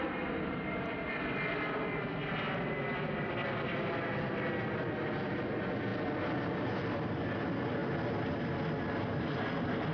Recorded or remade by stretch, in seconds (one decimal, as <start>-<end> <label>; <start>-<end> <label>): 0.0-9.9 recorded